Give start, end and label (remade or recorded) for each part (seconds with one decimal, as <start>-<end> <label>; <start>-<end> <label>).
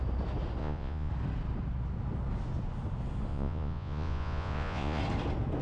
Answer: 0.0-0.6 recorded; 0.6-1.1 remade; 1.1-3.3 recorded; 3.3-5.0 remade; 5.0-5.6 recorded